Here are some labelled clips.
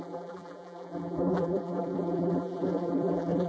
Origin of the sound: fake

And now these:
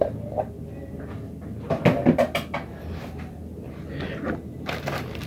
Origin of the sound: real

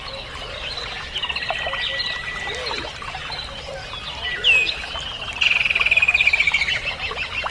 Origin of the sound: real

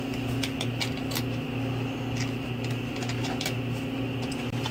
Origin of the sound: real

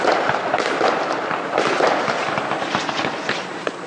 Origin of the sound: real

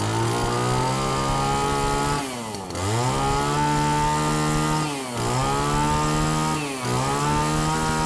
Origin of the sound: real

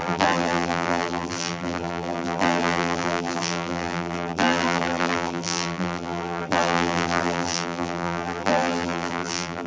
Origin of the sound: fake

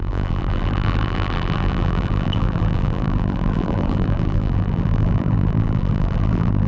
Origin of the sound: fake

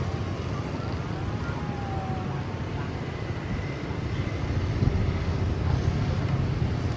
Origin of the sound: real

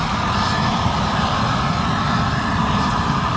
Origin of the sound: real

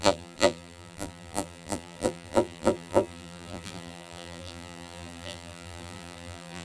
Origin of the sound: fake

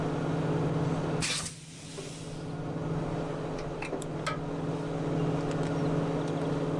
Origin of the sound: real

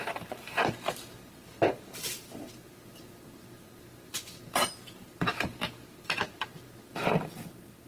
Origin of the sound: fake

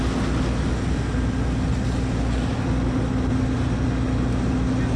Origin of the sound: real